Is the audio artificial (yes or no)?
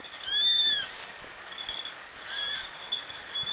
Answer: yes